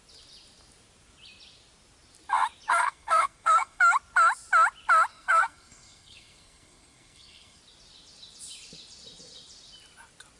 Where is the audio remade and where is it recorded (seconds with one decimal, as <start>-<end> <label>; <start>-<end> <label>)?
0.0-2.8 recorded; 2.8-3.8 remade; 3.8-5.1 recorded; 5.1-7.6 remade; 7.6-10.4 recorded